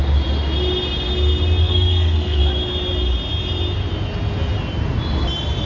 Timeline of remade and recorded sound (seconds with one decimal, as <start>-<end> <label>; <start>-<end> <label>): 0.0-1.6 recorded; 1.6-2.4 remade; 2.4-5.7 recorded